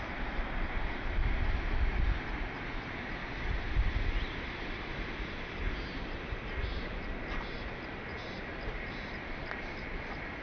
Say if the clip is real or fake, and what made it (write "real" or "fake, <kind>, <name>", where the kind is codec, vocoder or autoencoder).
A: real